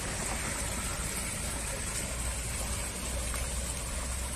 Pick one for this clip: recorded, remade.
recorded